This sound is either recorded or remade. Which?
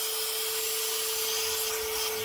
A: recorded